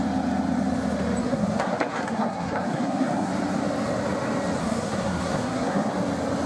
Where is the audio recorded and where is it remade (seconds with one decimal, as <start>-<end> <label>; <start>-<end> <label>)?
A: 0.0-1.2 recorded; 1.2-3.3 remade; 3.3-4.6 recorded; 4.6-5.9 remade; 5.9-6.5 recorded